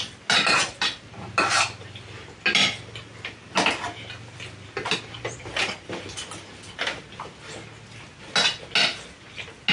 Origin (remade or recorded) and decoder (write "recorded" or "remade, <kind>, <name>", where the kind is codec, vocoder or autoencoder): recorded